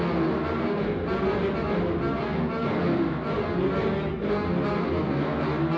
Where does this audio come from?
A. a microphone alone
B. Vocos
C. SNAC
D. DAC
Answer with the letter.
A